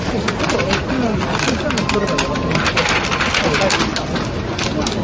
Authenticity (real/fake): real